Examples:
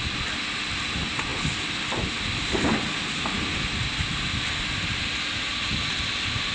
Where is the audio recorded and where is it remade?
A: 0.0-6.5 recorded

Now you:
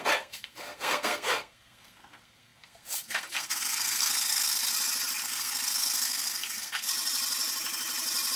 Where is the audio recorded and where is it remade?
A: 0.0-4.7 remade; 4.7-5.2 recorded; 5.2-6.9 remade; 6.9-8.4 recorded

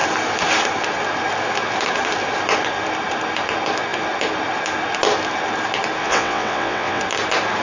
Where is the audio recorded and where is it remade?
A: 0.0-6.0 recorded; 6.0-7.0 remade; 7.0-7.6 recorded